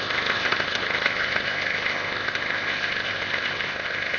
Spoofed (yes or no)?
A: yes